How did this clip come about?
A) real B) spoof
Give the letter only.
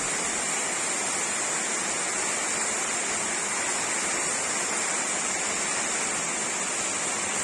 A